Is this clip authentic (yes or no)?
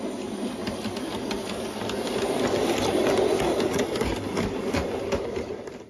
yes